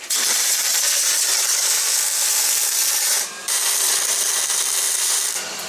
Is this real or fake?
fake